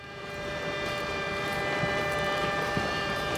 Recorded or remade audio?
remade